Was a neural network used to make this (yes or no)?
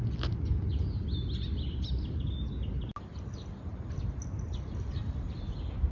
no